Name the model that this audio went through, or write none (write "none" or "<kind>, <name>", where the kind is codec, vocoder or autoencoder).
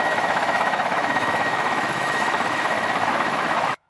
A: autoencoder, DAC-VAE